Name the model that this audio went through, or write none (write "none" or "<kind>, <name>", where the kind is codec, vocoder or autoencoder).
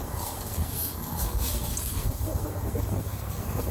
codec, SNAC